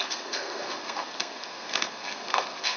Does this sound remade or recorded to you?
remade